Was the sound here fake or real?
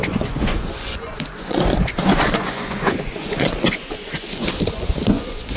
fake